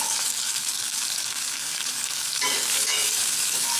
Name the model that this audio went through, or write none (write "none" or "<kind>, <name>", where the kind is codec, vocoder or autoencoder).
codec, DAC